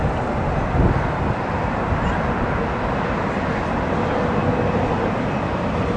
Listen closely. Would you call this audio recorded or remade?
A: recorded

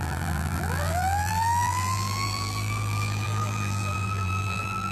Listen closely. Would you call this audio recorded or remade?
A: remade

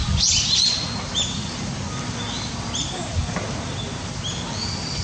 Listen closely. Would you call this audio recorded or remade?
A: recorded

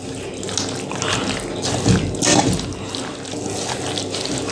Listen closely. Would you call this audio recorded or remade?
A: recorded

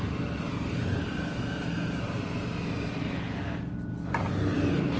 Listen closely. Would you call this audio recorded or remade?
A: recorded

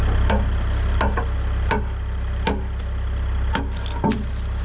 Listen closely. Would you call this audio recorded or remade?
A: recorded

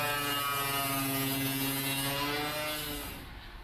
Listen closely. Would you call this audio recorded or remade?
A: recorded